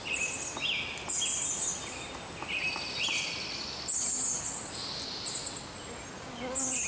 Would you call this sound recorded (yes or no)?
yes